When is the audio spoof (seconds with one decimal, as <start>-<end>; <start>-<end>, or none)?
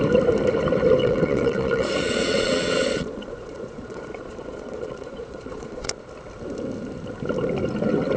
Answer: 1.0-5.9